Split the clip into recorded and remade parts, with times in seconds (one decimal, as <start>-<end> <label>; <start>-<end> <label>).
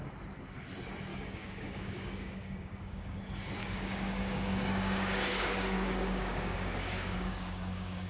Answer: 0.0-1.1 recorded; 1.1-3.2 remade; 3.2-3.6 recorded; 3.6-8.1 remade